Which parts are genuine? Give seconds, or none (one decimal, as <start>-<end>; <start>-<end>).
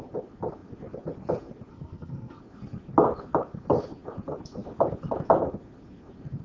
0.0-1.7; 2.4-6.4